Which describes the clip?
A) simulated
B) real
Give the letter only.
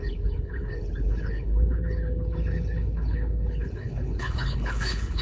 A